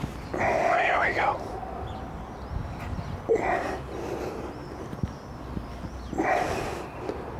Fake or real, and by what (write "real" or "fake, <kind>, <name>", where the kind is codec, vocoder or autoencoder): real